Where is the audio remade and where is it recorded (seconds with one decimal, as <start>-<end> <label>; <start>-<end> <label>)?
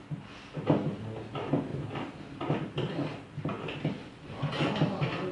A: 0.0-4.0 recorded; 4.0-4.7 remade; 4.7-5.3 recorded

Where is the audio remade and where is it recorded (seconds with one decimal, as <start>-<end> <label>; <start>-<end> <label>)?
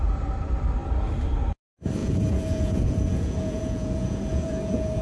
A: 0.0-2.0 recorded; 2.0-5.0 remade